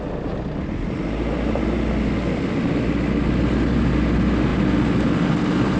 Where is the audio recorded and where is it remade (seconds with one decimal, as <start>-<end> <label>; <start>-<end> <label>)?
0.0-5.8 recorded